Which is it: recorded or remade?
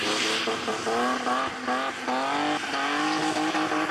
recorded